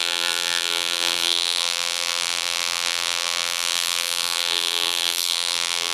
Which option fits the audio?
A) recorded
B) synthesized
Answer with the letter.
B